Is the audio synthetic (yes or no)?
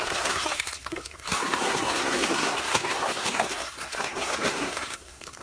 yes